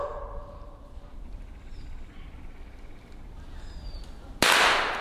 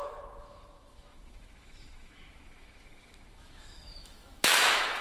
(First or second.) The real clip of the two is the first